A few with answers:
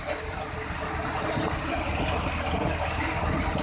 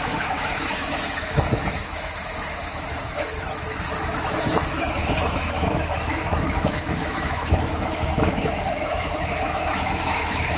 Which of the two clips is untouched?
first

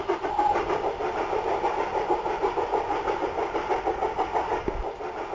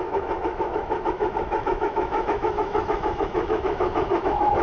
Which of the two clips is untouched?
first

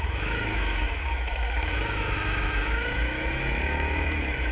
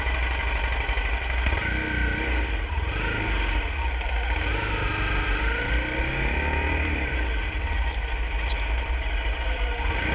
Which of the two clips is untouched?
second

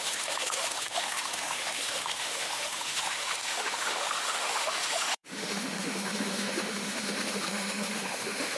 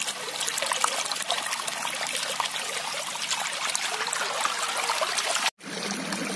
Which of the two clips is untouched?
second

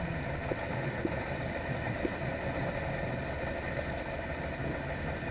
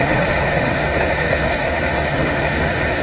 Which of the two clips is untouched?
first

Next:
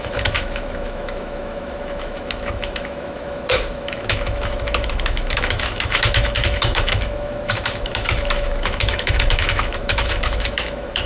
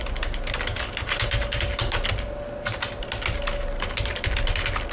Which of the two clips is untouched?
second